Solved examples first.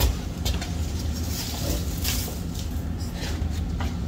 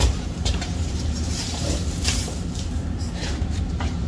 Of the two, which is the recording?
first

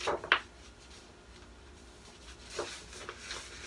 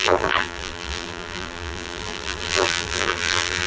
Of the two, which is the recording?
first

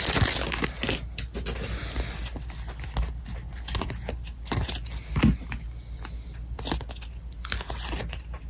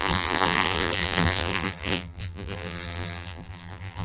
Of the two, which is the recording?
first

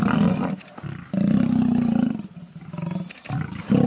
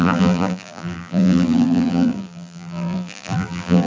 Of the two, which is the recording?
first